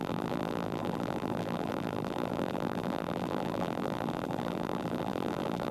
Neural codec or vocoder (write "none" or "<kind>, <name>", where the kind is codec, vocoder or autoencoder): vocoder, BigVGAN v2